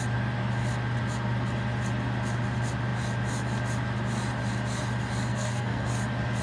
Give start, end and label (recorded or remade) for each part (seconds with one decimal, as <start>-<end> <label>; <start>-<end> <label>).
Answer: 0.0-5.3 recorded; 5.3-5.9 remade; 5.9-6.4 recorded

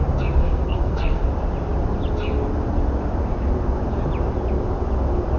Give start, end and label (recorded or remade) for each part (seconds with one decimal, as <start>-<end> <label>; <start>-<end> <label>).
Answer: 0.0-0.4 recorded; 0.4-1.2 remade; 1.2-5.4 recorded

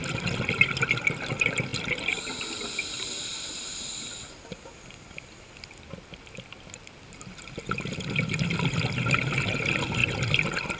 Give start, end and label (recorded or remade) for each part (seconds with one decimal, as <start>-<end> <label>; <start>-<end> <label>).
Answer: 0.0-10.8 recorded

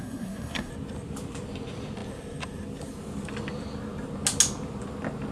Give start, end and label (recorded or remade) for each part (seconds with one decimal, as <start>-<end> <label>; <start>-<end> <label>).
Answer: 0.0-0.7 remade; 0.7-5.3 recorded